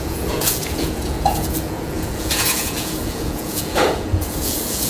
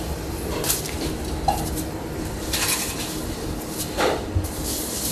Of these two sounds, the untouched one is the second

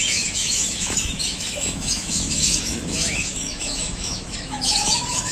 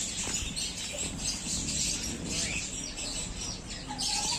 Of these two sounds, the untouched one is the second